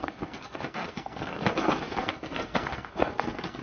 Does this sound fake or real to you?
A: fake